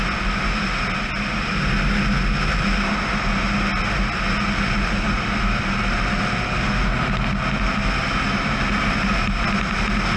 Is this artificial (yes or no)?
no